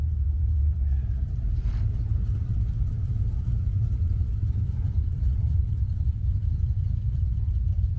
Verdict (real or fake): fake